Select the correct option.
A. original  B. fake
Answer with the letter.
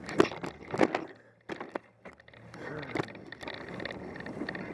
A